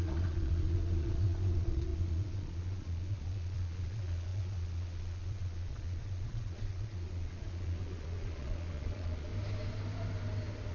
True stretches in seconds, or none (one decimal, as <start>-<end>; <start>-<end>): 9.3-10.7